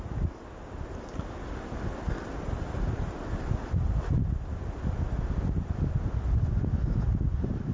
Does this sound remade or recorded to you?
recorded